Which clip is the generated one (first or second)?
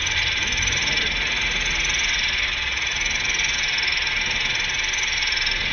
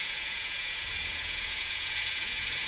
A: second